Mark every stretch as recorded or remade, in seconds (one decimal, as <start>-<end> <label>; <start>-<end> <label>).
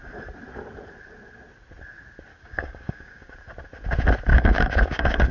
0.0-2.3 recorded; 2.3-3.3 remade; 3.3-4.3 recorded; 4.3-5.3 remade